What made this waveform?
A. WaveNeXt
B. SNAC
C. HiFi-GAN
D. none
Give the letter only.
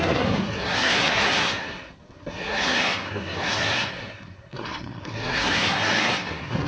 B